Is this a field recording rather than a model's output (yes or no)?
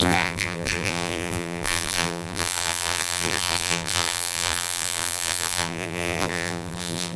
no